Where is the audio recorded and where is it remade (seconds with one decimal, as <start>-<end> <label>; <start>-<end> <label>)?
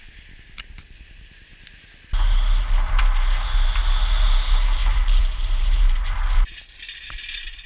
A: 0.0-4.8 recorded; 4.8-6.6 remade; 6.6-7.7 recorded